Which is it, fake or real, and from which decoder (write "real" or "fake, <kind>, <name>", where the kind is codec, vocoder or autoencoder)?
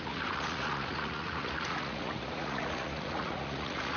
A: fake, vocoder, Vocos